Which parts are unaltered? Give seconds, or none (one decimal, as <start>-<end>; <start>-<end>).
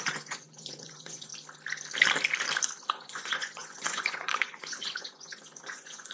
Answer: 1.3-2.9